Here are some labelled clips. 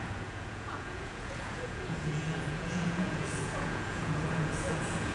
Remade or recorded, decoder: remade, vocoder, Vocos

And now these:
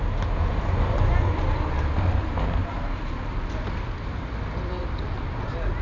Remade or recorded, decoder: recorded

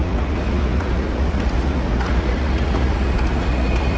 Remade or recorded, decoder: remade, vocoder, Vocos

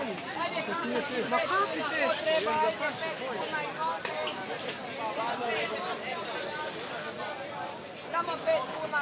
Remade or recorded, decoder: recorded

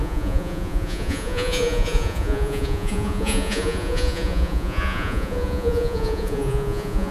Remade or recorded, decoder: remade, vocoder, Vocos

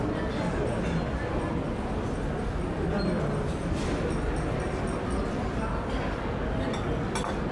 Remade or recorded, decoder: recorded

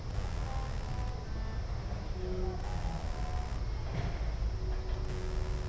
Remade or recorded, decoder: recorded